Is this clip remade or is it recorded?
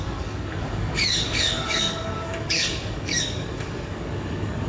remade